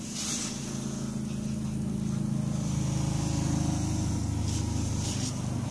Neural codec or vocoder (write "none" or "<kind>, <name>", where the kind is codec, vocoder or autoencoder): none